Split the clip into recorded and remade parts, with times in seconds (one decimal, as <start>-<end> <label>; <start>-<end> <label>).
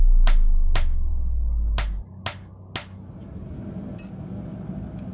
0.0-5.1 recorded